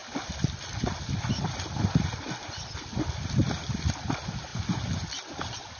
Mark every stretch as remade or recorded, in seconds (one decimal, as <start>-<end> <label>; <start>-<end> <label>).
0.0-4.5 remade; 4.5-5.8 recorded